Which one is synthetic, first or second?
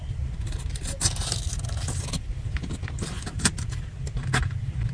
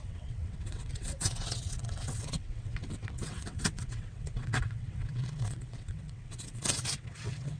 second